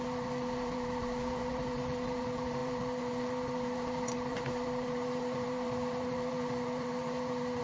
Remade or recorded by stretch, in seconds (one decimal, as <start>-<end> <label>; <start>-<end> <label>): 0.0-7.6 remade